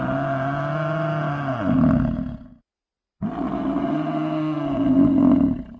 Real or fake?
real